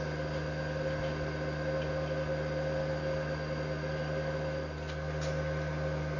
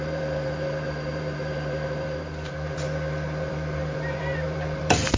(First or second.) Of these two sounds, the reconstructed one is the second